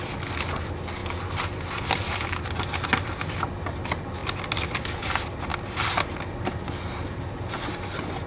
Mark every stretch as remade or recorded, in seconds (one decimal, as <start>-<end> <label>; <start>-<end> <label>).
0.0-1.0 recorded; 1.0-2.1 remade; 2.1-8.3 recorded

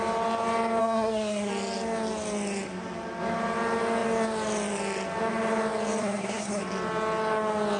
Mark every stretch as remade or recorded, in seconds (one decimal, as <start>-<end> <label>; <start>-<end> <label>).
0.0-0.8 recorded; 0.8-1.5 remade; 1.5-6.0 recorded; 6.0-6.6 remade; 6.6-7.8 recorded

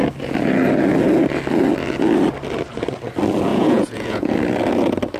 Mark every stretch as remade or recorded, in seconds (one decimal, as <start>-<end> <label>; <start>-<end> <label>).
0.0-3.5 recorded; 3.5-4.3 remade; 4.3-5.2 recorded

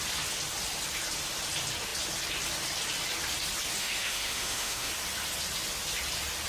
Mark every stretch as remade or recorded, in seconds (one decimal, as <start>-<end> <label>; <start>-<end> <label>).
0.0-3.8 recorded; 3.8-4.9 remade; 4.9-6.5 recorded

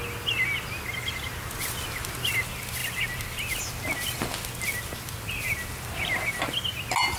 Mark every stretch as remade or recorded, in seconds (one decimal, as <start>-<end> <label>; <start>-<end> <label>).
0.0-7.2 recorded

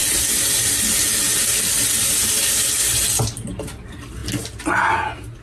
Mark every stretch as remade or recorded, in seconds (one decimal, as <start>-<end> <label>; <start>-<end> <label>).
0.0-5.4 recorded

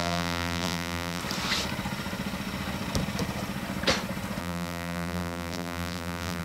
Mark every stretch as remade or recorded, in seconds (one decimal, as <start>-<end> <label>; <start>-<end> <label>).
0.0-1.2 remade; 1.2-4.4 recorded; 4.4-6.4 remade

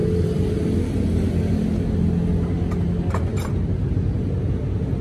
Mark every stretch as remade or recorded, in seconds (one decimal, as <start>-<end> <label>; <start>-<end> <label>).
0.0-3.3 recorded; 3.3-4.5 remade; 4.5-5.0 recorded